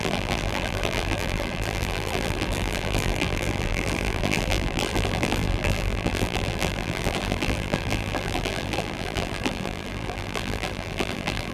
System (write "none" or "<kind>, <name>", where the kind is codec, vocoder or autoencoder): vocoder, BigVGAN v2